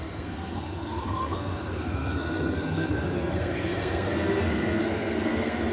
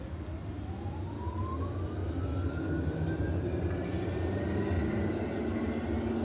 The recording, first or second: second